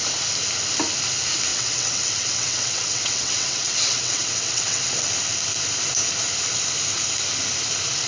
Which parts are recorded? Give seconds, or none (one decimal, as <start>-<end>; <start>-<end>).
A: 0.0-1.5; 4.9-8.1